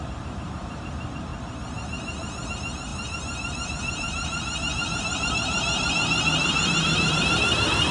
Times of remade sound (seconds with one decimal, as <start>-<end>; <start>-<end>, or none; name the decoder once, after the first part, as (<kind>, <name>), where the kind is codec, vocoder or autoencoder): 0.0-1.3 (vocoder, BigVGAN v2); 2.5-7.9